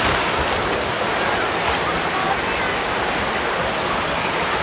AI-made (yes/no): no